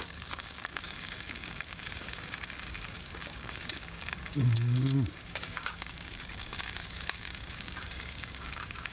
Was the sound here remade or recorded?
remade